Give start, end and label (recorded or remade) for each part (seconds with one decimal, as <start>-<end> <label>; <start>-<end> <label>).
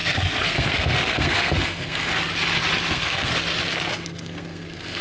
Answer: 0.0-2.1 remade; 2.1-2.9 recorded; 2.9-3.3 remade; 3.3-3.9 recorded; 3.9-5.0 remade